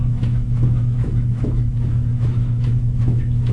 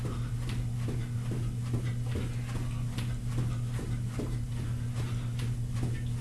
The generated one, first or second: first